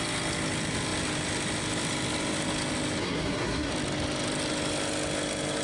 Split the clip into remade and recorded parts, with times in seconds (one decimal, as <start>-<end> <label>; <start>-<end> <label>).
0.0-3.0 recorded; 3.0-3.7 remade; 3.7-5.6 recorded